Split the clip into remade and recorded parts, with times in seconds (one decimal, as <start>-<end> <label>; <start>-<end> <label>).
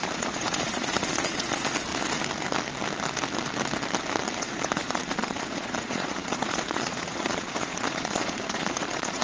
0.0-1.9 remade; 1.9-4.4 recorded; 4.4-9.2 remade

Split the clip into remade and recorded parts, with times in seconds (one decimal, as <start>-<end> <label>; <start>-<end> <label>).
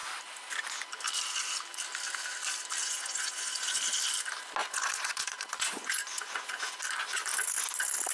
0.0-2.8 recorded; 2.8-3.8 remade; 3.8-4.6 recorded; 4.6-6.8 remade; 6.8-8.1 recorded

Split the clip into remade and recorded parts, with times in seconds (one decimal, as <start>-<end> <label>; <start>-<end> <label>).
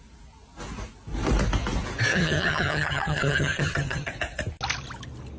0.0-2.1 recorded; 2.1-4.1 remade; 4.1-5.4 recorded